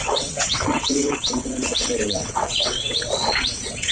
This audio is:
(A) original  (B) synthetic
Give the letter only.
B